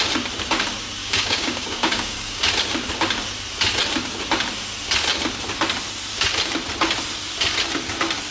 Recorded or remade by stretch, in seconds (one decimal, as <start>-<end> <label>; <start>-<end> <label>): 0.0-1.0 recorded; 1.0-2.5 remade; 2.5-8.3 recorded